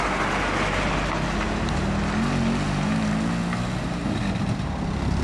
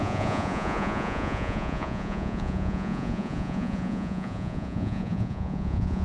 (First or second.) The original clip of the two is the first